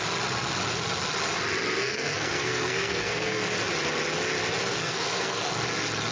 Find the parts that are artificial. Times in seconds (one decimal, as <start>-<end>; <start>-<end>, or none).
1.8-3.4; 4.8-5.5